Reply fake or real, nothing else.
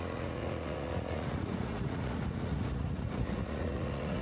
fake